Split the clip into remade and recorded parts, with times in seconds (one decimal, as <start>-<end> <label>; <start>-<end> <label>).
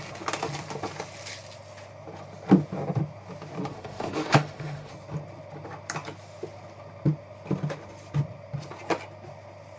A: 0.0-3.7 recorded; 3.7-4.9 remade; 4.9-9.8 recorded